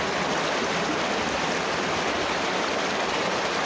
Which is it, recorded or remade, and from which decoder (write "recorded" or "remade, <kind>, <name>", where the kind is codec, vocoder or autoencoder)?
recorded